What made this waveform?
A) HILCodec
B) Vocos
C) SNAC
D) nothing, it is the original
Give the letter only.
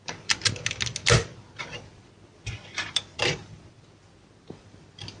D